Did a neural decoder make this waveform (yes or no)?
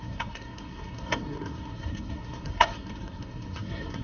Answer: yes